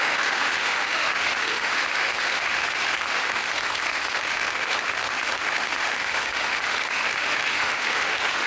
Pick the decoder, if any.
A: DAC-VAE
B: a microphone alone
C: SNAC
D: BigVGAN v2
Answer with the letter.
A